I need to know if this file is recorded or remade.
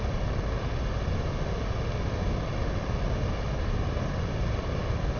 recorded